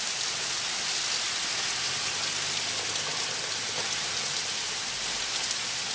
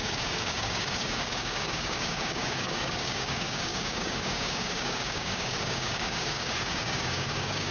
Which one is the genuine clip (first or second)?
first